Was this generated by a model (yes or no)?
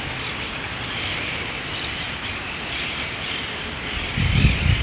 no